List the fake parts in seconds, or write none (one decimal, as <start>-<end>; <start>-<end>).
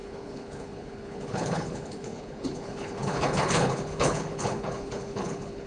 0.0-5.7